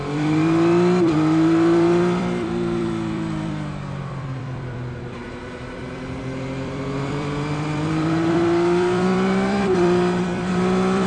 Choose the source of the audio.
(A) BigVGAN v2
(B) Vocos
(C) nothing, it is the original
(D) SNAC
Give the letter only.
A